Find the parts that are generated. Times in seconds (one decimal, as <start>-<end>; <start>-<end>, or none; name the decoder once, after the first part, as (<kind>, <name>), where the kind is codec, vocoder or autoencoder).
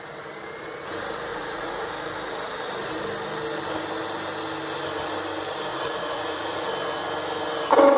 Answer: 1.3-1.9 (vocoder, Vocos); 5.7-6.7